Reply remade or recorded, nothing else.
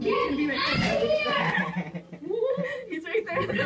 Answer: recorded